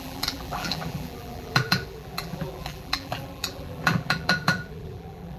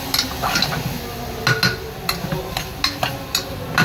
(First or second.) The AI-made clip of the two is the first